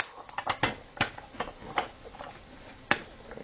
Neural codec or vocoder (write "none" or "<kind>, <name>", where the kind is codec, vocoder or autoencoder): none